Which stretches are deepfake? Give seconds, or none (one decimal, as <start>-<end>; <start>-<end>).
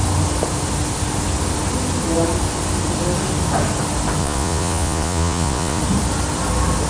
4.2-5.8